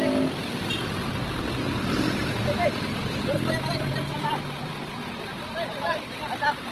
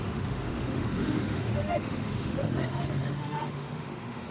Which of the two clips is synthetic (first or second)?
second